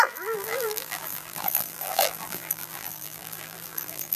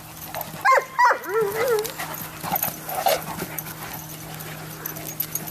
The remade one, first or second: first